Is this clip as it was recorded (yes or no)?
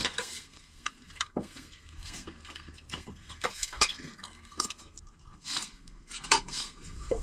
no